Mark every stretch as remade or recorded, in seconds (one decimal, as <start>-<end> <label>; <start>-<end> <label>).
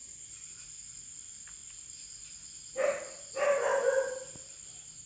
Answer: 0.0-0.5 remade; 0.5-3.7 recorded; 3.7-4.6 remade; 4.6-5.1 recorded